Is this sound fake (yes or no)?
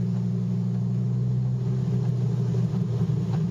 no